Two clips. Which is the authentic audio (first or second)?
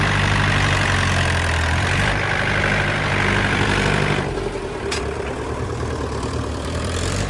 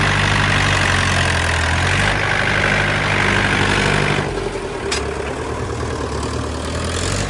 second